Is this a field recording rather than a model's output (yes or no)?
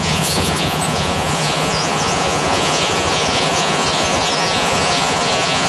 no